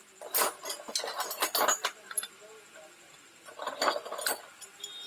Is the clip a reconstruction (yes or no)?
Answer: no